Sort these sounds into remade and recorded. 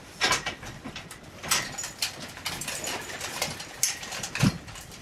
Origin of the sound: recorded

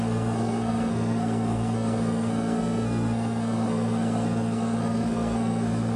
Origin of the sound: remade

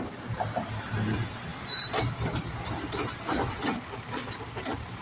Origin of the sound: recorded